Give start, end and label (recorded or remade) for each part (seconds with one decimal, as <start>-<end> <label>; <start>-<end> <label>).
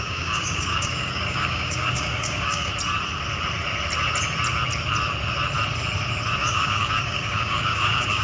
0.0-2.7 remade; 2.7-6.4 recorded; 6.4-8.2 remade